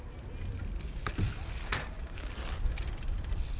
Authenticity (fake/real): real